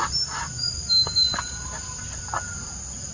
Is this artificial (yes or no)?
no